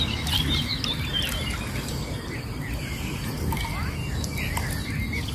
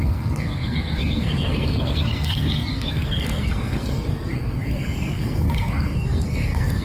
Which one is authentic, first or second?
first